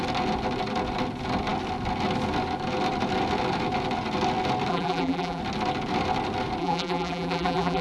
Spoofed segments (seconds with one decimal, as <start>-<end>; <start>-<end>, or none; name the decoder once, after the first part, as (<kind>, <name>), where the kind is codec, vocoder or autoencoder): 4.7-5.4 (vocoder, BigVGAN v2); 6.6-7.8